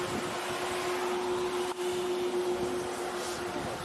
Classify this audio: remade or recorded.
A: recorded